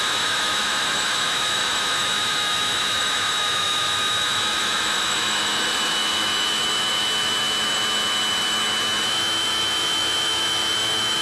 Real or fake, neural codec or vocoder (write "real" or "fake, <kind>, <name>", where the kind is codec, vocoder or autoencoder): fake, autoencoder, DAC-VAE